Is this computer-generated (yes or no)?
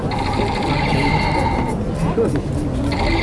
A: no